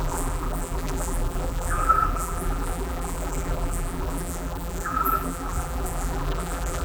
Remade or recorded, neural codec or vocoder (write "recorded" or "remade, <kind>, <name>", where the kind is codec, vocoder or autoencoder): remade, vocoder, BigVGAN v2